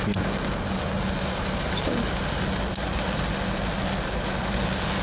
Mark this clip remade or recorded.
recorded